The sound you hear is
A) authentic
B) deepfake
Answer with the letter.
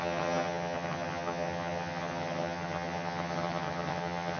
B